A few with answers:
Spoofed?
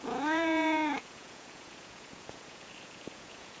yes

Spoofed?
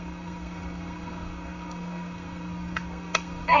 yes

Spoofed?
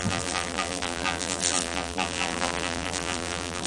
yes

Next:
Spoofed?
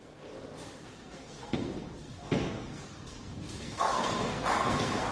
yes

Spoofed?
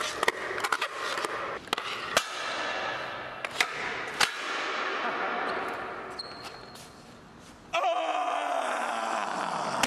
no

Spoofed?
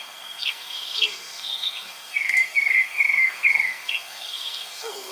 yes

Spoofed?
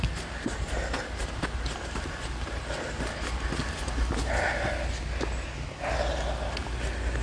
no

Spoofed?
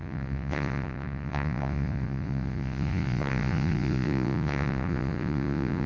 yes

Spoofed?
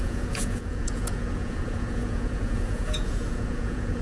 yes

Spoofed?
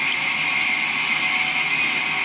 no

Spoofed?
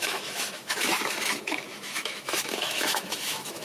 yes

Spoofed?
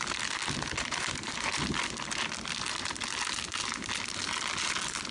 no